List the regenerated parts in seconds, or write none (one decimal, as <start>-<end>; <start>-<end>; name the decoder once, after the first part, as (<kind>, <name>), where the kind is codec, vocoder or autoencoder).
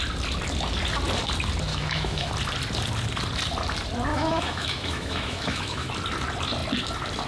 1.7-2.3 (autoencoder, DAC-VAE); 4.1-5.9